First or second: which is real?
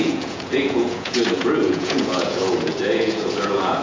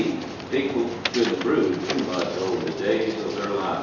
second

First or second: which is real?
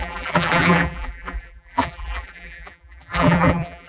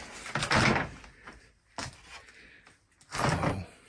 second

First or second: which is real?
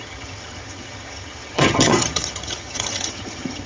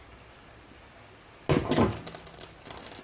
second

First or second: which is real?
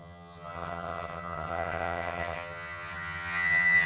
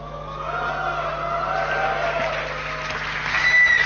second